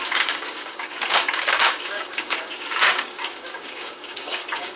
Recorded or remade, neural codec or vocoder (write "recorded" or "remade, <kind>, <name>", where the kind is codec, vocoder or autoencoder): remade, codec, DAC